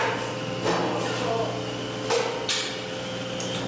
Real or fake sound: real